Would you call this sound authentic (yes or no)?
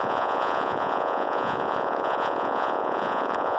no